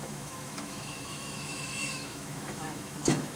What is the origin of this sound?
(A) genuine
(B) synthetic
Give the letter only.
B